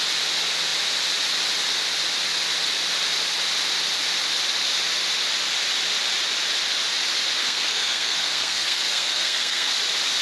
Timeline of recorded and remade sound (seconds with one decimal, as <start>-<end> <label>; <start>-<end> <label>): 0.0-7.4 recorded; 7.4-9.7 remade; 9.7-10.2 recorded